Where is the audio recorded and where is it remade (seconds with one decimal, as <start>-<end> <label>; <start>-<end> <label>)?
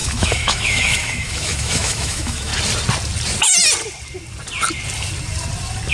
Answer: 0.0-2.5 remade; 2.5-5.9 recorded